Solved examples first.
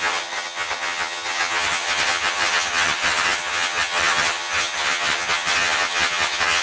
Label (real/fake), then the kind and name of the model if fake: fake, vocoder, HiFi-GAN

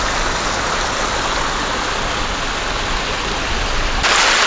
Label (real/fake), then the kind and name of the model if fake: real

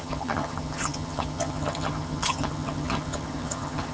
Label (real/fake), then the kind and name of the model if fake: fake, vocoder, HiFi-GAN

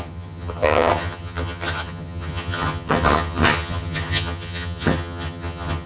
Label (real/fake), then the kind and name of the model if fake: fake, vocoder, HiFi-GAN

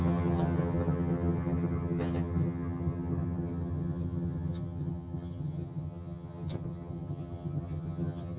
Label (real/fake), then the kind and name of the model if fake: fake, vocoder, HiFi-GAN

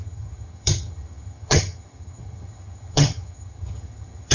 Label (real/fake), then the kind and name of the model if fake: fake, vocoder, HiFi-GAN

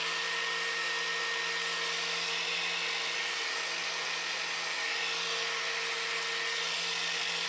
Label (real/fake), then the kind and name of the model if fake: real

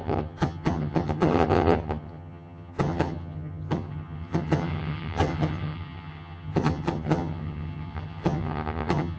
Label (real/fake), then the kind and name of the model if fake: fake, vocoder, HiFi-GAN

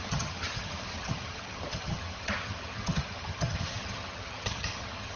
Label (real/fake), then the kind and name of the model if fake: fake, vocoder, HiFi-GAN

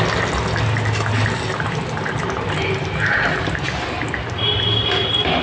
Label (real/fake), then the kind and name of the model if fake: real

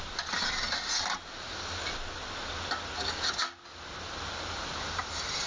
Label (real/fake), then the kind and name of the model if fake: real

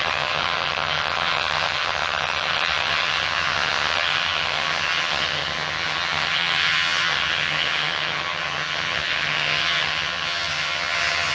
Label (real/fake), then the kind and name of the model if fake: fake, vocoder, HiFi-GAN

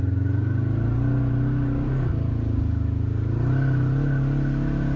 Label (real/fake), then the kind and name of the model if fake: real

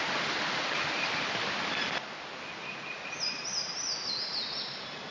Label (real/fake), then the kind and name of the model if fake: real